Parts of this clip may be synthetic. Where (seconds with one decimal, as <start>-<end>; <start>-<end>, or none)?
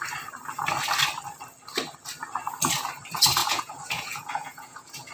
3.4-5.1